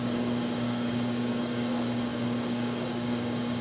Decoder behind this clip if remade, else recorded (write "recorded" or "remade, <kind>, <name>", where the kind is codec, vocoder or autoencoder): remade, codec, DAC